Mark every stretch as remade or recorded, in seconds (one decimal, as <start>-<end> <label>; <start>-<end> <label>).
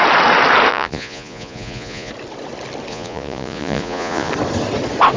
0.0-0.7 recorded; 0.7-2.1 remade; 2.1-2.9 recorded; 2.9-4.3 remade; 4.3-5.2 recorded